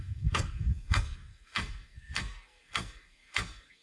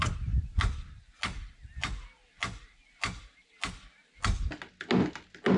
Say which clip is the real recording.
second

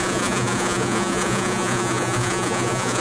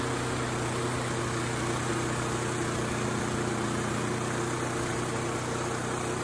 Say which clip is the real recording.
second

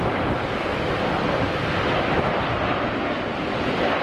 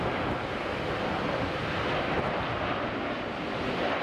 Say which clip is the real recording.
second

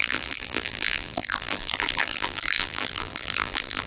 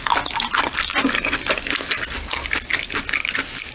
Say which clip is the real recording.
second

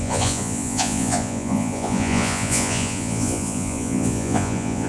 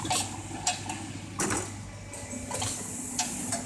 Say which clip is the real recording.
second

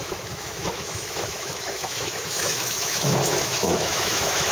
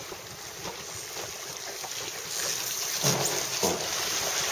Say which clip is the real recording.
second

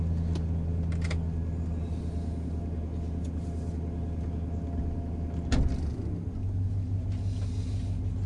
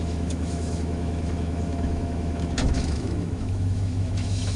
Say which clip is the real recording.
first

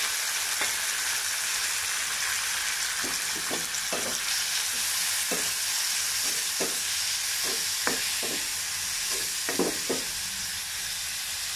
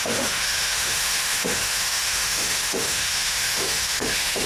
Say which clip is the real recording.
first